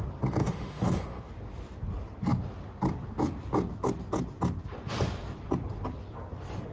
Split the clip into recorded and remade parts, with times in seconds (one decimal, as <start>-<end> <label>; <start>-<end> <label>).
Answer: 0.0-0.4 recorded; 0.4-1.3 remade; 1.3-6.7 recorded